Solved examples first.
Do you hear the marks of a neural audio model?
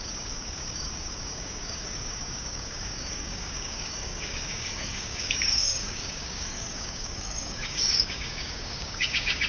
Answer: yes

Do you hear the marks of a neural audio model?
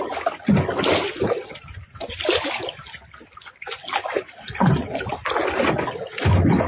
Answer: no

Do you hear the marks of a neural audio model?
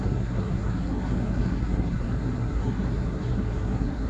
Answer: yes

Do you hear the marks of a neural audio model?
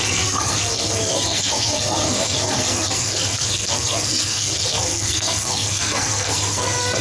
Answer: yes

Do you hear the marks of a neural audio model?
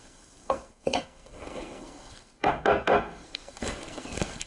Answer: yes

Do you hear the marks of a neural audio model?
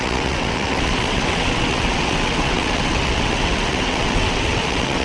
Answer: yes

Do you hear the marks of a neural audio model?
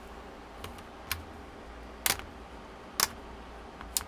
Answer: no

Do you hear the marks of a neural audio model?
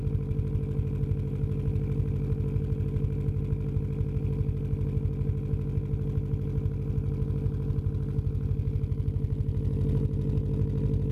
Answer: no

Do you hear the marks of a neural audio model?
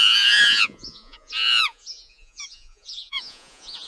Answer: yes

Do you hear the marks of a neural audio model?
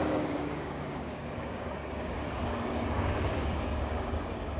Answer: yes